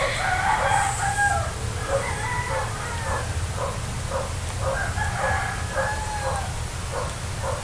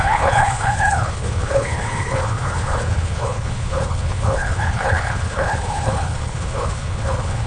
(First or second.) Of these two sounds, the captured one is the first